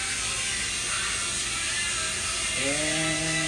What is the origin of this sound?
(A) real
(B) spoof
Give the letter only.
A